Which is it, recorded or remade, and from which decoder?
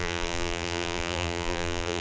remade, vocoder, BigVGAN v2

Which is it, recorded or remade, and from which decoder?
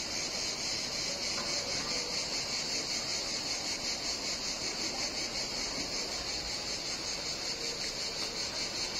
recorded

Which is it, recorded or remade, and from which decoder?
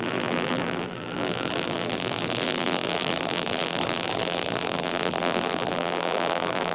remade, vocoder, BigVGAN v2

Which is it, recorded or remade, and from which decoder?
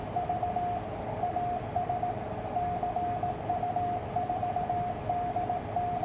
remade, vocoder, BigVGAN v2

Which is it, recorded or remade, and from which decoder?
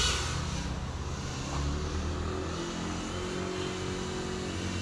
recorded